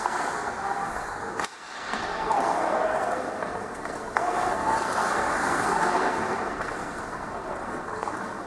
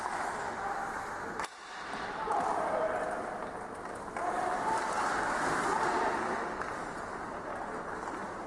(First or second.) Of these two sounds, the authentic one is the second